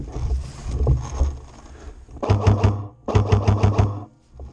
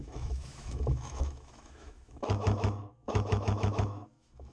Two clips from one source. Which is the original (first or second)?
first